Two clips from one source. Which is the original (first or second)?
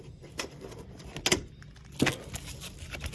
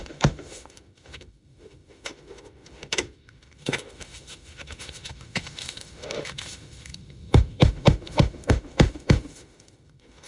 first